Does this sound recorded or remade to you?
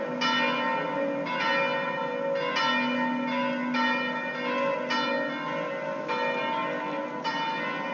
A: recorded